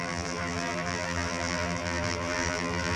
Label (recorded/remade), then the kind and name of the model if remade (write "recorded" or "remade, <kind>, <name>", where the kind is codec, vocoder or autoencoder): remade, vocoder, BigVGAN v2